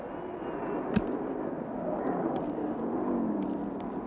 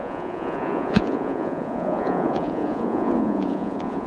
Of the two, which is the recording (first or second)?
first